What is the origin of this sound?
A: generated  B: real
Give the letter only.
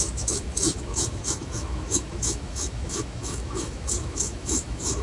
A